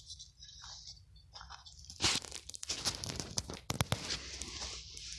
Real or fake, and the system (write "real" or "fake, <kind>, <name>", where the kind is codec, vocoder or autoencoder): real